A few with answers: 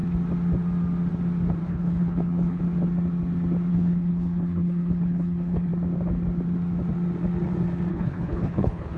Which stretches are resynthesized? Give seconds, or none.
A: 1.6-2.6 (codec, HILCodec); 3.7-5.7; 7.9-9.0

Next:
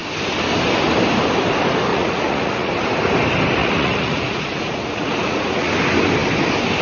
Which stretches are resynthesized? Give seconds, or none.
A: 1.9-2.7 (vocoder, Vocos); 3.6-5.7

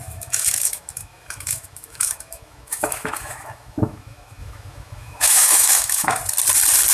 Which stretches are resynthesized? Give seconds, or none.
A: 0.0-6.2 (autoencoder, DAC-VAE)

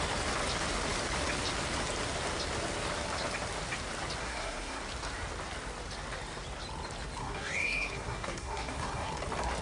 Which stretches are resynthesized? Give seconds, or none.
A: 4.2-4.8 (codec, SNAC); 7.2-9.1

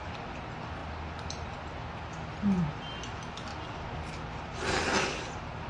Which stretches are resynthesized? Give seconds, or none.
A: none

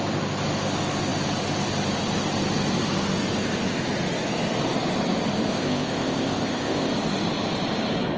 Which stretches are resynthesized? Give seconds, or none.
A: 5.5-6.9 (codec, ZipCodec)

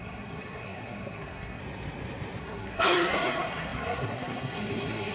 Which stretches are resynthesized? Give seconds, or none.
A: 0.0-1.6 (codec, SNAC); 2.4-5.1